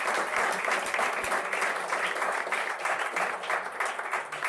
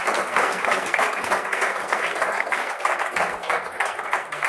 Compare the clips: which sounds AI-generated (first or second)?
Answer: second